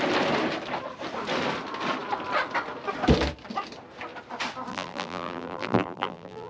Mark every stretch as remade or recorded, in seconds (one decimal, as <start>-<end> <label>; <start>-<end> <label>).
0.0-4.7 recorded; 4.7-6.5 remade